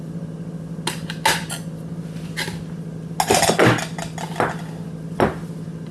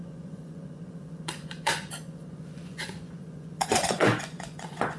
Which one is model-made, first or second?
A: second